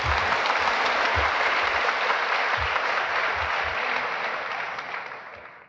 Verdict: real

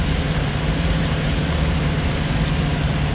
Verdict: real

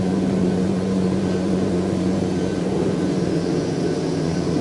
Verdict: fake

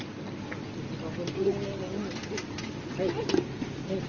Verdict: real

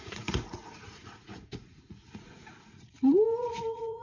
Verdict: fake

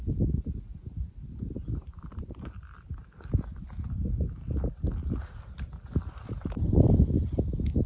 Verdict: real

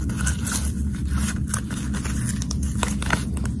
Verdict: real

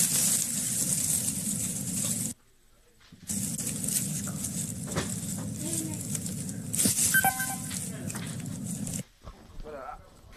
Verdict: real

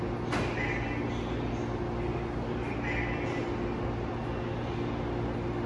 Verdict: real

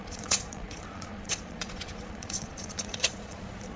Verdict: fake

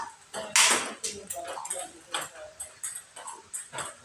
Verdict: real